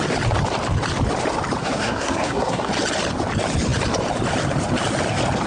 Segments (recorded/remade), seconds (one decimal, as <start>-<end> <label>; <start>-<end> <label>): 0.0-1.6 recorded; 1.6-2.7 remade; 2.7-5.5 recorded